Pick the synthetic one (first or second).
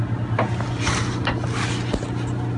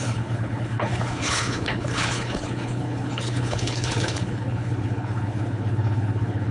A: second